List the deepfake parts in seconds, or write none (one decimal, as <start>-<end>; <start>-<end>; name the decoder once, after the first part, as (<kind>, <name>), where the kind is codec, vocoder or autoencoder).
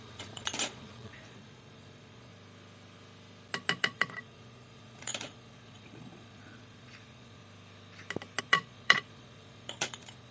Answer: 0.0-2.3 (vocoder, Vocos); 3.8-7.4; 8.4-10.3